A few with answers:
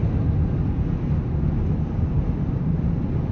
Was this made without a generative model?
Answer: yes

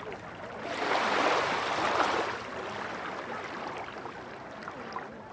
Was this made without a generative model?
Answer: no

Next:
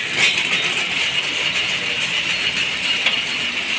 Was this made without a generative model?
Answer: yes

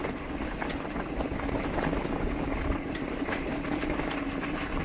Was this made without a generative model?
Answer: yes